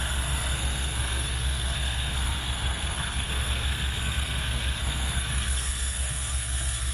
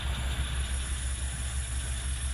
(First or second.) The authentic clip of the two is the second